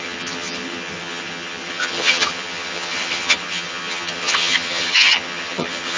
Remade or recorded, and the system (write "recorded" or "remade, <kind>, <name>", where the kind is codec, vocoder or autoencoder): remade, vocoder, HiFi-GAN